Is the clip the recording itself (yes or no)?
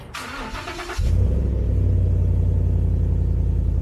yes